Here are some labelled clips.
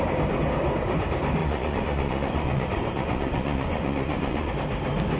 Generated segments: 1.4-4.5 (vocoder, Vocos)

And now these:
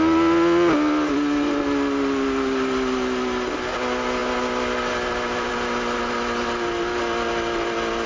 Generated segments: none

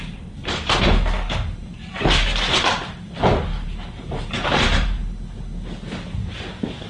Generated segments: 0.0-0.4 (vocoder, BigVGAN v2); 3.4-5.0; 6.3-6.9

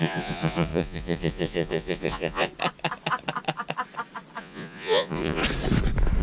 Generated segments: 0.0-2.5 (vocoder, Vocos); 4.4-5.4

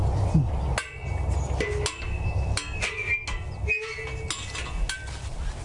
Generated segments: none

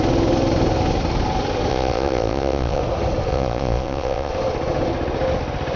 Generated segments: 1.7-2.8 (vocoder, Vocos); 3.3-4.3

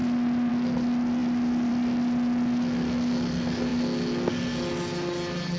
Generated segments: none

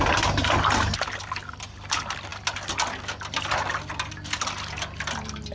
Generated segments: none